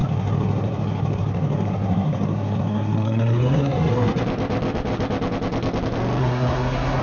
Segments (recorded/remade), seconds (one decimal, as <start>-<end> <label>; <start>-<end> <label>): 0.0-4.2 remade; 4.2-6.2 recorded; 6.2-7.0 remade